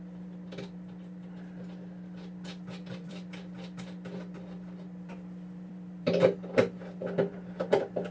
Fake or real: fake